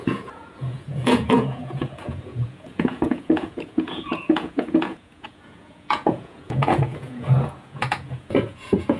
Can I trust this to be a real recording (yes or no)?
no